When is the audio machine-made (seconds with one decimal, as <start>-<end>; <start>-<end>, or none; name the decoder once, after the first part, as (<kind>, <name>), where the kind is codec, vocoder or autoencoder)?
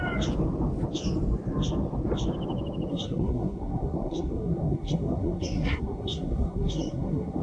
2.9-7.4 (codec, SNAC)